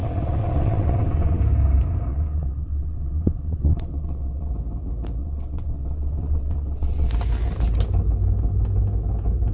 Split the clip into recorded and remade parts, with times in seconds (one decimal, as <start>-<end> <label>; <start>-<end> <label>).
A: 0.0-1.4 remade; 1.4-2.1 recorded; 2.1-4.5 remade; 4.5-5.2 recorded; 5.2-7.1 remade; 7.1-9.5 recorded